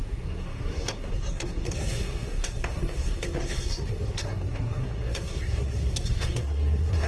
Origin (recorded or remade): remade